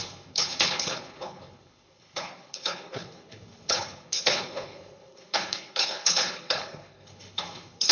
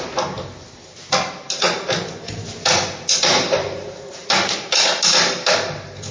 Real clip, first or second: second